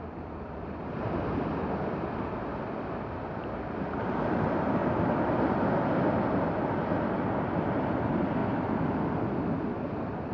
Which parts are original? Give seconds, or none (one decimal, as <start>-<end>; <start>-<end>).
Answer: 4.8-7.3; 8.4-9.2